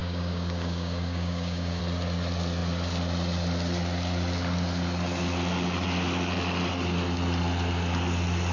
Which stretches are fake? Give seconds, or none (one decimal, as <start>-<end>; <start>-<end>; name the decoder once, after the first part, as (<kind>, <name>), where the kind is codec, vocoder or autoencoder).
0.0-1.8 (codec, DAC)